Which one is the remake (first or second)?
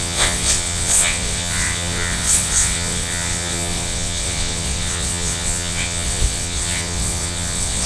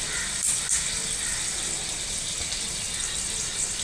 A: first